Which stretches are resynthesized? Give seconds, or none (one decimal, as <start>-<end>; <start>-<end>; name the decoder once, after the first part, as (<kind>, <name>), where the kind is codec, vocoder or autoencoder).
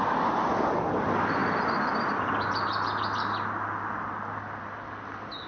none